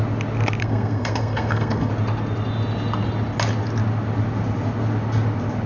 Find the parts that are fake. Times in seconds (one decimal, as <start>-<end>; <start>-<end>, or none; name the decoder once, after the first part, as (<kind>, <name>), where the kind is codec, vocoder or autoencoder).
0.6-1.9 (codec, SNAC)